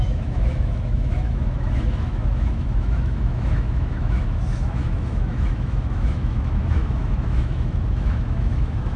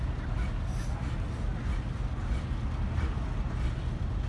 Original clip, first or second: second